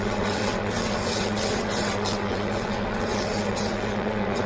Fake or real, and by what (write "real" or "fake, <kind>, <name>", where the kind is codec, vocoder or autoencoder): fake, vocoder, WaveNeXt